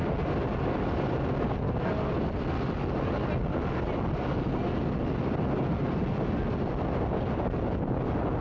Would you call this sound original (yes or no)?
yes